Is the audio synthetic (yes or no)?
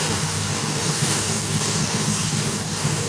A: yes